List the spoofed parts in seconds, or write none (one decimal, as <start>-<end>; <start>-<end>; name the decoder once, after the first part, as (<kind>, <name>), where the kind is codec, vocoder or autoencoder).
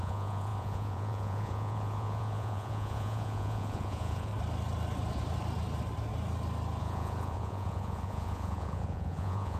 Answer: 0.0-4.3 (vocoder, Vocos); 6.8-9.6